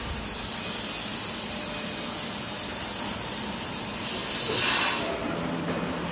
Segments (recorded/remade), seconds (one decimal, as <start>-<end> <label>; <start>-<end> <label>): 0.0-6.1 recorded